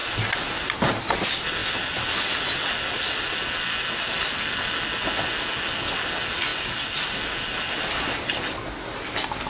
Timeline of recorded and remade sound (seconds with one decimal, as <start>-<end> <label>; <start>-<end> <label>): 0.0-9.5 recorded